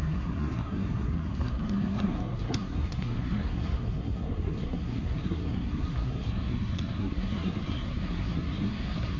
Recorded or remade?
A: remade